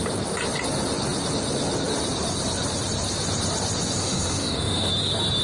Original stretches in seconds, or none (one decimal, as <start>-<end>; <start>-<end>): 0.0-4.0; 4.9-5.4